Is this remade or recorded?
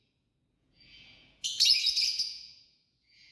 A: remade